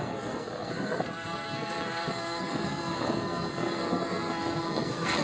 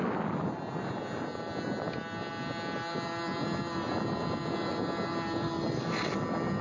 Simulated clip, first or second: first